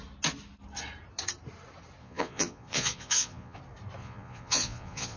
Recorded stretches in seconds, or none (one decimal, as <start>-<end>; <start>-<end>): 0.0-2.0; 3.6-4.0